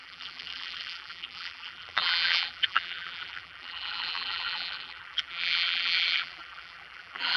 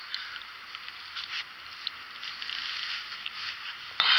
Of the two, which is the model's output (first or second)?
first